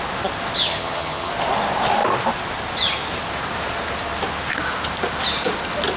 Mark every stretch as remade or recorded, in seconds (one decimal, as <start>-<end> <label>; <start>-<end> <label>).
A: 0.0-0.6 recorded; 0.6-1.3 remade; 1.3-6.0 recorded